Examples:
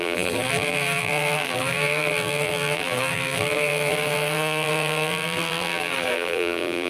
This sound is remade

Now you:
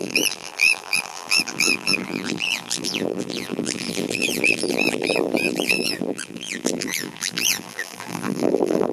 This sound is remade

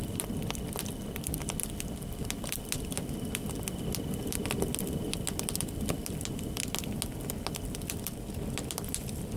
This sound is recorded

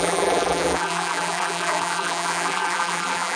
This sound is remade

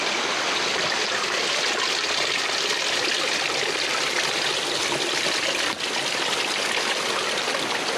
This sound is recorded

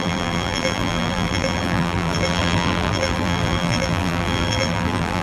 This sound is remade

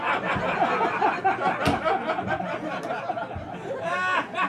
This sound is recorded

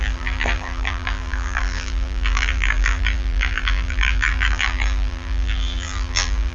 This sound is remade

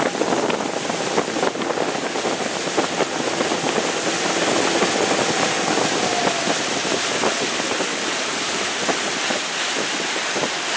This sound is recorded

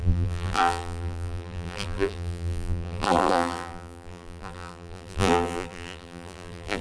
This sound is remade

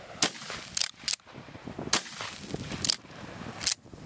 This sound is recorded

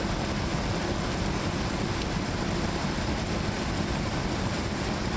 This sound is remade